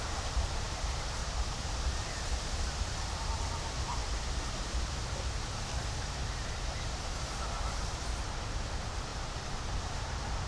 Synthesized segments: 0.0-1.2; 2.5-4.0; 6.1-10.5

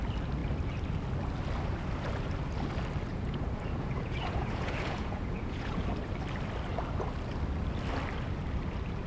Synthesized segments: 3.1-5.8

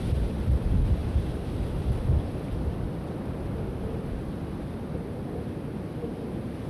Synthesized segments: none

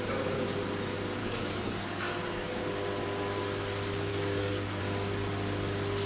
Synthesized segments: 1.2-2.6; 4.1-4.8

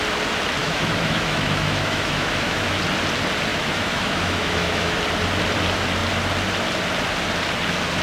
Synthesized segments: 0.6-2.8; 3.5-5.0